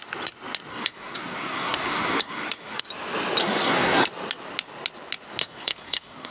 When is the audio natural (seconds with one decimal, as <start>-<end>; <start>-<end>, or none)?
0.0-0.7; 2.8-3.4; 4.1-5.4